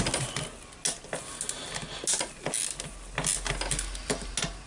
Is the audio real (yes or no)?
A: yes